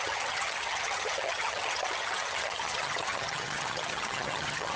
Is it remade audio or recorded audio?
remade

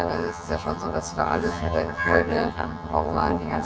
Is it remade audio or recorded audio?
remade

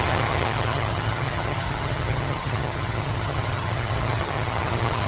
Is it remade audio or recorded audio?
remade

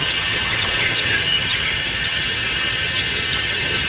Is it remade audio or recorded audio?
remade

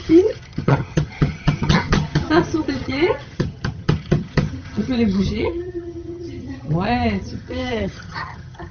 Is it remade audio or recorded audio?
remade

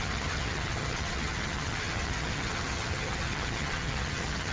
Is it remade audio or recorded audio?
remade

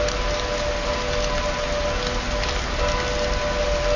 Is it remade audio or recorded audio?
recorded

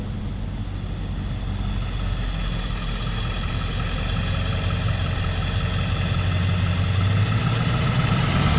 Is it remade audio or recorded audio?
recorded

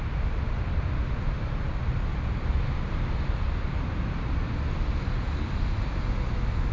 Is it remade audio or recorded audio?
recorded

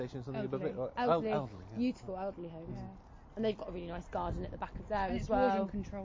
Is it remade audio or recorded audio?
recorded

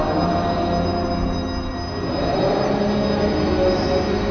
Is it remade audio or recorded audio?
recorded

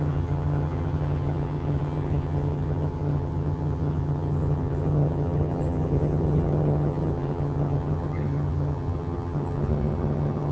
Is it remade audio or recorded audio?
remade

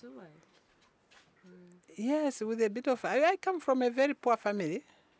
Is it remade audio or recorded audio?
recorded